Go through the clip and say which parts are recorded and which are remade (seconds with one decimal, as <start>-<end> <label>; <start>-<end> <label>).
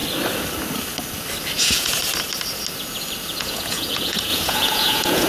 0.0-1.6 recorded; 1.6-2.0 remade; 2.0-3.4 recorded; 3.4-5.3 remade